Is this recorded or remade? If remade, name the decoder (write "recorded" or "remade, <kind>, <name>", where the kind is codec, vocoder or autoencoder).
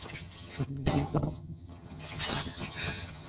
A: remade, vocoder, HiFi-GAN